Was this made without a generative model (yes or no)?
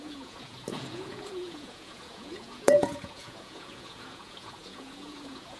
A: no